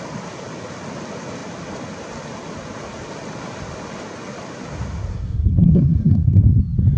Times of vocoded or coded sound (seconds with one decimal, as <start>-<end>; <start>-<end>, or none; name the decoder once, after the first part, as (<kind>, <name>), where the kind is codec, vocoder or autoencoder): 5.1-6.6 (codec, SNAC)